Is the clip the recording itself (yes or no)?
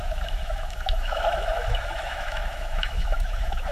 no